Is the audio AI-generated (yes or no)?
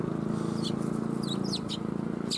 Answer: no